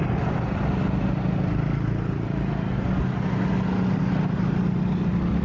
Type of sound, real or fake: real